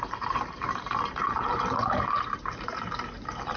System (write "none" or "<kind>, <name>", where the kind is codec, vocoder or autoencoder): vocoder, BigVGAN v2